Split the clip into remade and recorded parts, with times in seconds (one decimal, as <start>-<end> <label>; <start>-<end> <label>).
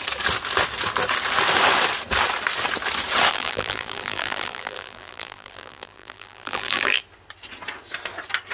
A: 0.0-3.3 recorded; 3.3-7.0 remade; 7.0-8.5 recorded